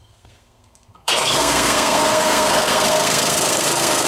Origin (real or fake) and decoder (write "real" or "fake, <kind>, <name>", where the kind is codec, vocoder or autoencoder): fake, codec, SNAC